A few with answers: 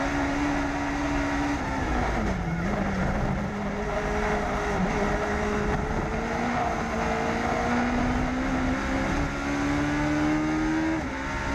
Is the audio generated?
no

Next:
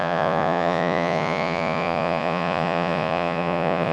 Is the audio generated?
yes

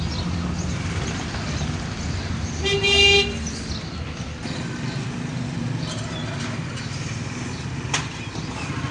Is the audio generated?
no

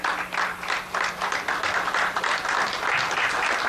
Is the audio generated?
no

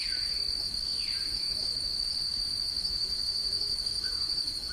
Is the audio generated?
yes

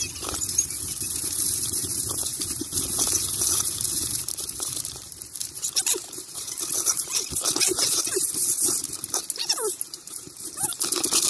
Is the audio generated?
yes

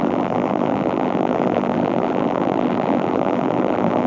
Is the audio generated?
yes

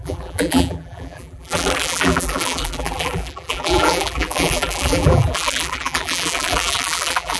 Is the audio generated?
yes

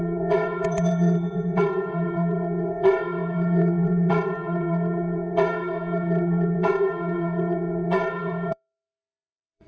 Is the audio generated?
yes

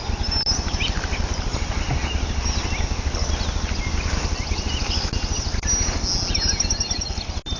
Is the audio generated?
no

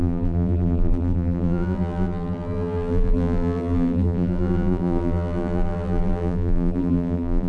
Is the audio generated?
yes